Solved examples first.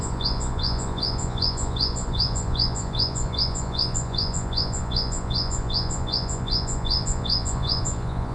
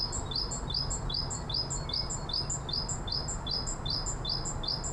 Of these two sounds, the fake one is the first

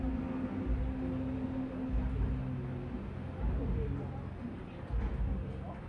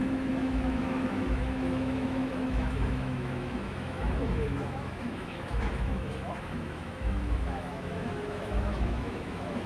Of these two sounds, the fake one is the second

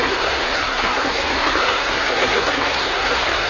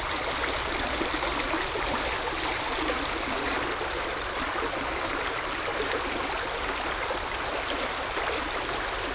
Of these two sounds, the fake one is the first